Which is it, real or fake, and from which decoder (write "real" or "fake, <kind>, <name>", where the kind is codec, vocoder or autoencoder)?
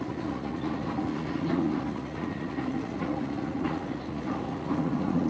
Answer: fake, vocoder, Vocos